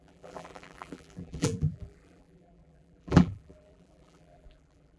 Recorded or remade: remade